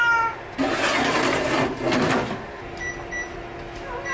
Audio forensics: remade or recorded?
recorded